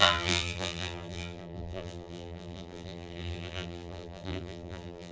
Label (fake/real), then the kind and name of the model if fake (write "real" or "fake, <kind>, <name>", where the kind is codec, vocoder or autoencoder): fake, vocoder, BigVGAN v2